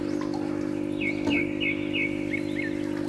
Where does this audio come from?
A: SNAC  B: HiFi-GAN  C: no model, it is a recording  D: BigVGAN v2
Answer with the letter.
C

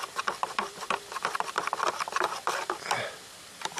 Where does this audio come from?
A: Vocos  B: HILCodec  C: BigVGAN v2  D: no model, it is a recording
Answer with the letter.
C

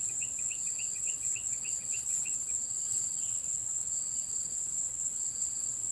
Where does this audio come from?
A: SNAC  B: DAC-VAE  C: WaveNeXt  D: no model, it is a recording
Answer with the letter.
C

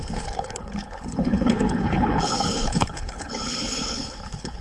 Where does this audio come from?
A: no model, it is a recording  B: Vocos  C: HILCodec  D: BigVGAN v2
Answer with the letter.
C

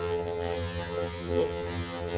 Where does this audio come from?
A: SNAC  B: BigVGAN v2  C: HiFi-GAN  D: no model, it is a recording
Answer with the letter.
C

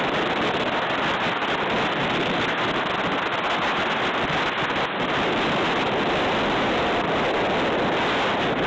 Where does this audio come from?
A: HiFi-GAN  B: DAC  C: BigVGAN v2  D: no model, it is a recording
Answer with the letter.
D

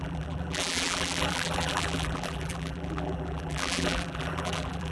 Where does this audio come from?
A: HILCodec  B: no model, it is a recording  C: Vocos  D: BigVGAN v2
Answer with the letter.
D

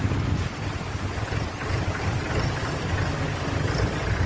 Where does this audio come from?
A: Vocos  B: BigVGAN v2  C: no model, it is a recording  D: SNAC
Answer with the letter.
B